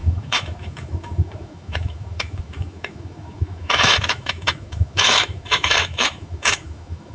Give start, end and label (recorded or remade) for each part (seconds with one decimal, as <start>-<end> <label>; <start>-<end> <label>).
0.0-7.1 remade